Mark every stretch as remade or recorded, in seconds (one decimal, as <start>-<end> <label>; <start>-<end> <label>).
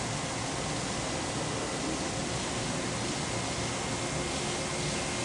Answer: 0.0-2.2 recorded; 2.2-2.9 remade; 2.9-5.2 recorded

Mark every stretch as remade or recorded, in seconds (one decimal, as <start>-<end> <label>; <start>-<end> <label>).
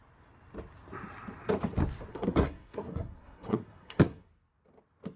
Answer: 0.0-2.1 recorded; 2.1-4.3 remade; 4.3-5.2 recorded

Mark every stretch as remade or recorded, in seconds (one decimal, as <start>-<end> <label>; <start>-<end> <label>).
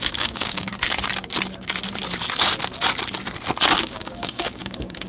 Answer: 0.0-0.7 remade; 0.7-3.8 recorded; 3.8-5.1 remade